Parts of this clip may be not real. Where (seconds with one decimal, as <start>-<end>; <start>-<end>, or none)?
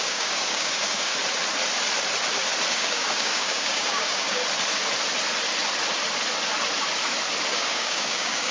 0.0-1.1; 2.7-4.4; 7.5-8.5